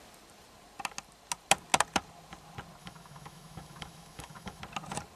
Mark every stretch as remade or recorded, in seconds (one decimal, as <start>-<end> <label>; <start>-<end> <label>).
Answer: 0.0-2.8 recorded; 2.8-4.6 remade; 4.6-5.2 recorded